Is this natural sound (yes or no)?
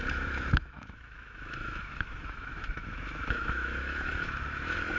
no